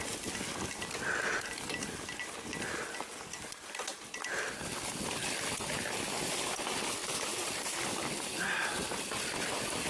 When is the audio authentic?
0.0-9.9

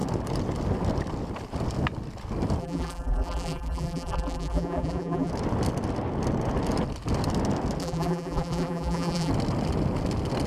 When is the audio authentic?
0.0-2.6; 5.3-7.8; 9.3-10.5

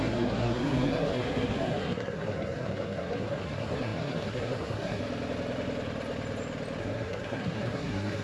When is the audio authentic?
5.0-6.8

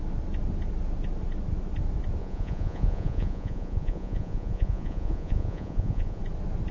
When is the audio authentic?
0.0-2.2; 6.2-6.7

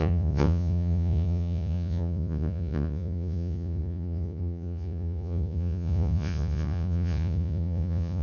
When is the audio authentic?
none

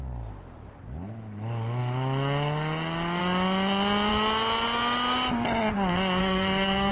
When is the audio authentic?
0.0-6.2

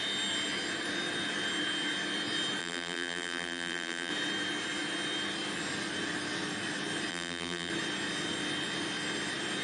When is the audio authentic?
0.0-2.6; 4.1-7.1; 7.7-9.6